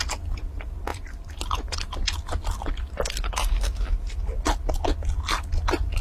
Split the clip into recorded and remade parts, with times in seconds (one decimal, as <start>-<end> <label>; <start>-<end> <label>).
0.0-0.9 recorded; 0.9-1.4 remade; 1.4-6.0 recorded